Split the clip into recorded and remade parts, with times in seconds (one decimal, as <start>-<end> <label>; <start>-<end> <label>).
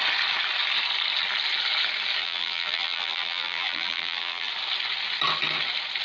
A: 0.0-2.2 recorded; 2.2-4.5 remade; 4.5-6.0 recorded